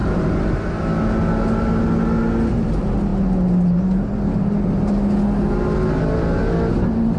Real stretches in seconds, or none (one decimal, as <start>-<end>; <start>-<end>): 0.0-7.2